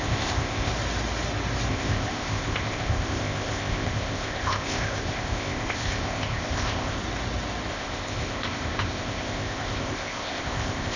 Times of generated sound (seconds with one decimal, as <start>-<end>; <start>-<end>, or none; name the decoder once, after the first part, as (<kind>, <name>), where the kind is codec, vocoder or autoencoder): 0.0-0.7 (codec, ZipCodec); 1.7-7.0; 7.7-11.0